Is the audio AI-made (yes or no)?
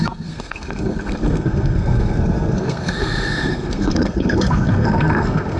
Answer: yes